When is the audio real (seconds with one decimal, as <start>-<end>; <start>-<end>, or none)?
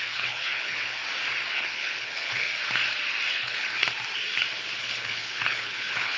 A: 1.0-1.5; 2.5-3.3; 3.7-4.8